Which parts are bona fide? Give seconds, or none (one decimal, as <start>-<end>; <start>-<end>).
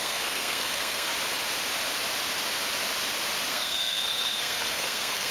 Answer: 1.1-3.5